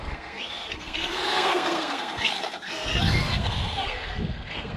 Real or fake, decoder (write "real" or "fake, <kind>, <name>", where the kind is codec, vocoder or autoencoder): fake, codec, SNAC